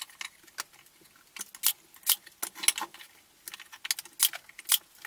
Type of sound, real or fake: real